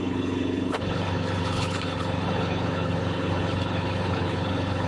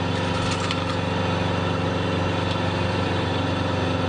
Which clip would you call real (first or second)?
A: second